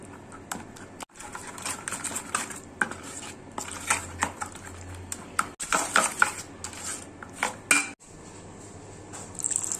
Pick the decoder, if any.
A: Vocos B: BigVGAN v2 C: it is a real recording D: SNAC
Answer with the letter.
C